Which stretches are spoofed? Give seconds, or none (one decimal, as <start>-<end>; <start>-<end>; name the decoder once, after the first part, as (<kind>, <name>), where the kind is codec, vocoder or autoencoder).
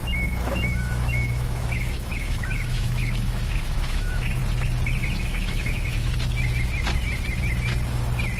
0.0-4.4 (autoencoder, DAC-VAE); 5.2-6.1